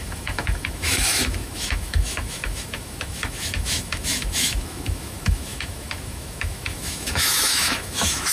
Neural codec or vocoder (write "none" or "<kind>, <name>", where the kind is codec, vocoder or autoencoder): autoencoder, DAC-VAE